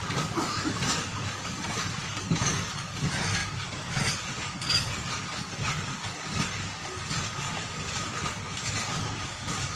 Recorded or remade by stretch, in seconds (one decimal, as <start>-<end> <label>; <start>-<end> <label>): 0.0-9.8 remade